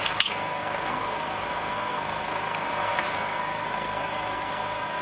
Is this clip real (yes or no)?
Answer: no